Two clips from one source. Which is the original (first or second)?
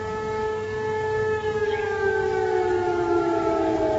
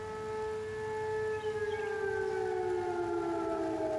second